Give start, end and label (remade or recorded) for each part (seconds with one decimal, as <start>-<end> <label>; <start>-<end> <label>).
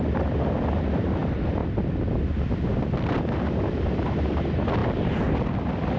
0.0-4.8 remade; 4.8-6.0 recorded